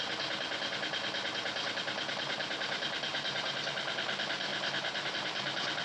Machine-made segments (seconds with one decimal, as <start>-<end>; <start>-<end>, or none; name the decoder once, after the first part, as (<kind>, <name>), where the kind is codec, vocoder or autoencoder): 3.1-3.7 (vocoder, BigVGAN v2); 4.5-5.1